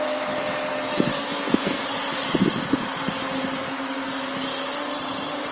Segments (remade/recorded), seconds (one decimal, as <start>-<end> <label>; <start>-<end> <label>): 0.0-1.2 recorded; 1.2-1.8 remade; 1.8-5.5 recorded

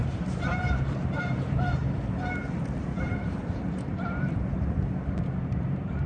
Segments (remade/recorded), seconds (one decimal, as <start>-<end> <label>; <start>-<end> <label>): 0.0-1.8 remade; 1.8-2.8 recorded; 2.8-6.1 remade